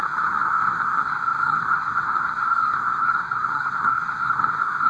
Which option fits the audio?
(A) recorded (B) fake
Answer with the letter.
B